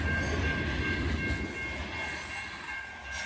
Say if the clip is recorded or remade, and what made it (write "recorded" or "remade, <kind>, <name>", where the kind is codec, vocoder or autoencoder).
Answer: recorded